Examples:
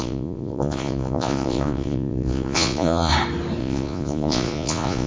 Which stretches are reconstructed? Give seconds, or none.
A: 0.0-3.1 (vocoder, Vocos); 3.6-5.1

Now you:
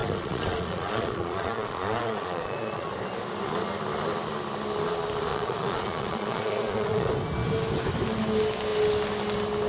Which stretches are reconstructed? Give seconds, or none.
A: 0.0-2.9 (vocoder, Vocos); 5.3-7.1

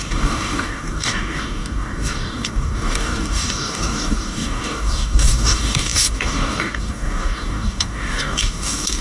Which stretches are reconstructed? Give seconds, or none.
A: 0.0-9.0 (codec, DAC)